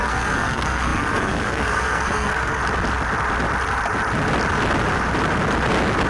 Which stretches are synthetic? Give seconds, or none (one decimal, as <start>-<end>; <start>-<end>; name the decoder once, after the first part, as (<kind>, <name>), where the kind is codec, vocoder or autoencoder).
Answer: 0.0-2.6 (codec, SNAC)